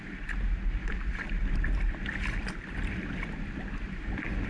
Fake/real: real